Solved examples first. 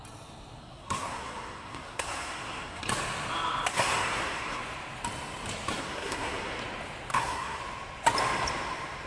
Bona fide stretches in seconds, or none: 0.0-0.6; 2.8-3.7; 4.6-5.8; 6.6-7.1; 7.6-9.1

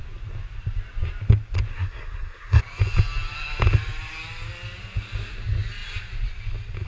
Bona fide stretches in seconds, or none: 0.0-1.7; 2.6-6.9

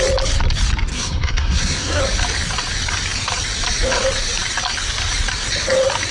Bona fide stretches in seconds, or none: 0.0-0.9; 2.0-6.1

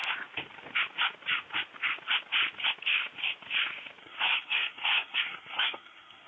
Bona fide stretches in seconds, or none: 0.0-4.0

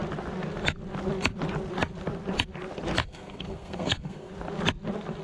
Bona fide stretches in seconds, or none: 0.0-3.0; 4.3-5.2

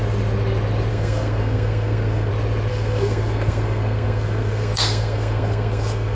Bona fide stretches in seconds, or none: 0.0-0.9; 2.3-2.7

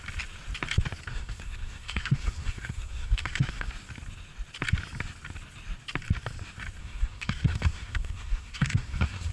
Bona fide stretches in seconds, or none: 0.0-1.1; 3.7-6.8